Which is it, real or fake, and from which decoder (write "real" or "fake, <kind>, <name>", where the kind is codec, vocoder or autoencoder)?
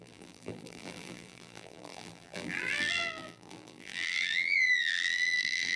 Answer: fake, vocoder, BigVGAN v2